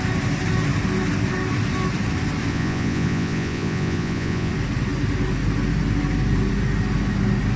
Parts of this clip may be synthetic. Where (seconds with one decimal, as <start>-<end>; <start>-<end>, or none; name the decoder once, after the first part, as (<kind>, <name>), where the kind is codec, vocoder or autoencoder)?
2.5-4.5 (vocoder, Vocos)